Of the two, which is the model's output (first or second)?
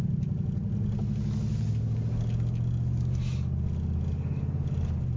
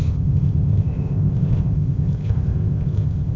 second